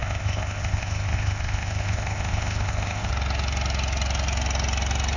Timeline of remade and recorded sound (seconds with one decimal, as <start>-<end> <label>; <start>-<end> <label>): 0.0-3.1 remade; 3.1-5.2 recorded